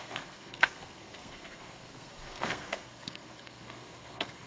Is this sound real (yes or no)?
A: no